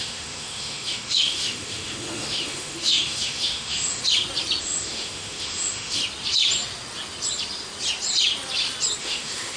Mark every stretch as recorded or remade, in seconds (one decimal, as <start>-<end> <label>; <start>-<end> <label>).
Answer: 0.0-4.0 remade; 4.0-4.6 recorded; 4.6-6.0 remade; 6.0-9.0 recorded; 9.0-9.6 remade